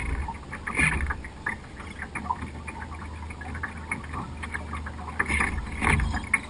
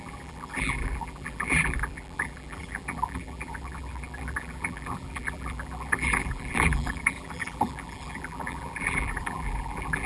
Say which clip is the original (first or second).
first